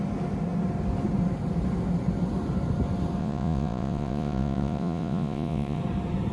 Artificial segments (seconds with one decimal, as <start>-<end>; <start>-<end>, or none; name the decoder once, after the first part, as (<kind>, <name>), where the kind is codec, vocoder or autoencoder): 3.2-5.8 (vocoder, Vocos)